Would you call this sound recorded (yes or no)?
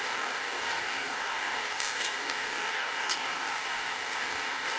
no